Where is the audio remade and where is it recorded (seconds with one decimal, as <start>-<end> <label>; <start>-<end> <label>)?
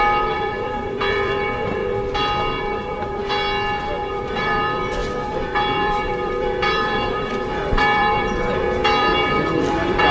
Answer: 0.0-1.8 remade; 1.8-2.6 recorded; 2.6-3.2 remade; 3.2-4.1 recorded; 4.1-10.1 remade